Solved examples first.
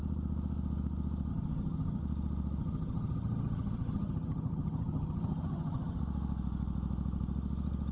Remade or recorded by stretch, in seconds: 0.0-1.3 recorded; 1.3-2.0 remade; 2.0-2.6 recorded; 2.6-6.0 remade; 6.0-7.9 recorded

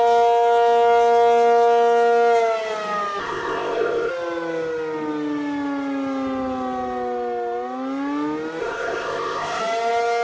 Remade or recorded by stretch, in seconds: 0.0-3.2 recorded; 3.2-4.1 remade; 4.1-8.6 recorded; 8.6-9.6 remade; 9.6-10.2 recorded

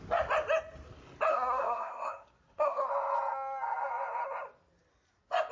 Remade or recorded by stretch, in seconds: 0.0-1.3 recorded; 1.3-2.9 remade; 2.9-5.5 recorded